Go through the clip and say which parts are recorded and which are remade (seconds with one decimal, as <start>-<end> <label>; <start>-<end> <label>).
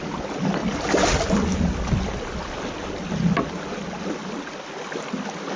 0.0-5.6 recorded